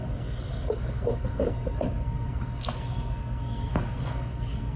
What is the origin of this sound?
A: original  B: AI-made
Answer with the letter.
B